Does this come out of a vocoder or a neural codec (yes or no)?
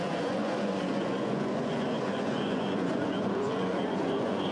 yes